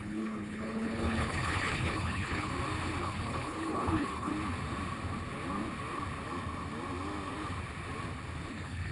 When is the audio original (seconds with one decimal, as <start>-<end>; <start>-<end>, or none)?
2.5-3.0; 4.3-8.5